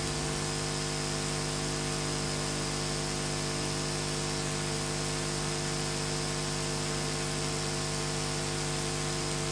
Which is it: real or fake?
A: real